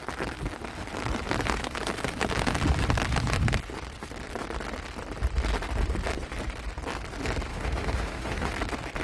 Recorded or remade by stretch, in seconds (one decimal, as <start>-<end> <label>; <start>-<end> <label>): 0.0-7.5 recorded; 7.5-8.5 remade; 8.5-9.0 recorded